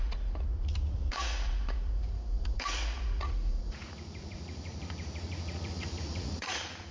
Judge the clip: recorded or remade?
remade